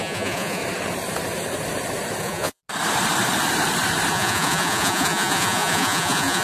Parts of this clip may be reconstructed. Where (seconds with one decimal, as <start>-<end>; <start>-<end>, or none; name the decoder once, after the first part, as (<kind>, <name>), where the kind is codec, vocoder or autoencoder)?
0.0-0.6 (vocoder, Vocos); 2.2-2.6; 4.1-6.4